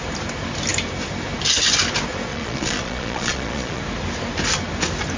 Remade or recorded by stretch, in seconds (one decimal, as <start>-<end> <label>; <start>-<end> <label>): 0.0-2.3 recorded; 2.3-3.8 remade; 3.8-5.2 recorded